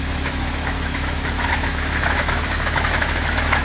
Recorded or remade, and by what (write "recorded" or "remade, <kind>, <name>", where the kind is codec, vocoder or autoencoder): remade, autoencoder, DAC-VAE